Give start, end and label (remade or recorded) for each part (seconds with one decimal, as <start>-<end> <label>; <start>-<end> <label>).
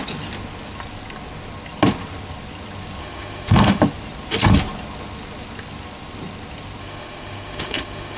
0.0-3.0 recorded; 3.0-3.8 remade; 3.8-6.8 recorded; 6.8-8.2 remade